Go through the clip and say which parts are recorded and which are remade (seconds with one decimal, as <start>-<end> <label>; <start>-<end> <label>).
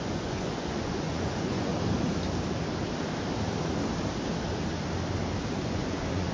0.0-1.7 remade; 1.7-5.5 recorded; 5.5-6.3 remade